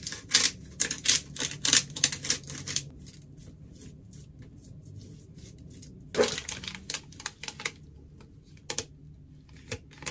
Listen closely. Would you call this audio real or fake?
real